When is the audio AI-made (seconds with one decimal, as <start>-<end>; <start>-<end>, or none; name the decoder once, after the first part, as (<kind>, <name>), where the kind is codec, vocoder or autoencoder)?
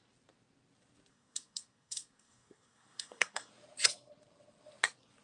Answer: 1.1-3.5 (codec, SNAC)